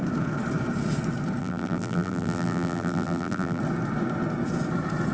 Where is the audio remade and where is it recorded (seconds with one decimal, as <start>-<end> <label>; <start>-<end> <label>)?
0.0-1.4 recorded; 1.4-3.6 remade; 3.6-5.1 recorded